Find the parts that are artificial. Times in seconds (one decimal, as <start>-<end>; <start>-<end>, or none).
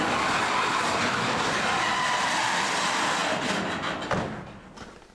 none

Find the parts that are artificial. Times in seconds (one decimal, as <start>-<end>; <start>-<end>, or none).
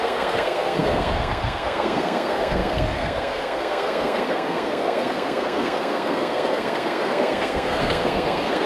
0.0-8.7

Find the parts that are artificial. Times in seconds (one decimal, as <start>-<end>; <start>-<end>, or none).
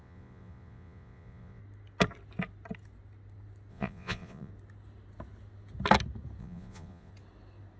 0.0-1.6; 3.7-4.5; 6.4-7.1